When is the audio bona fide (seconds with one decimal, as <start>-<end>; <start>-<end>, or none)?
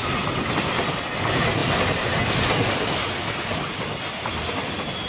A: 0.5-5.1